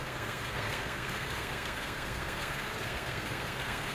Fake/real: fake